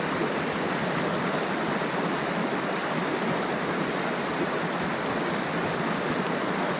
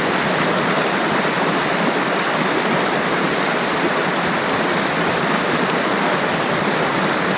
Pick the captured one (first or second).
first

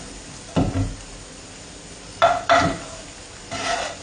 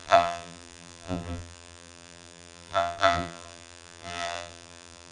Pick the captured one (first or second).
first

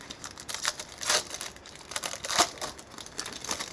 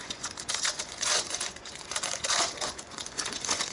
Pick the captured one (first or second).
first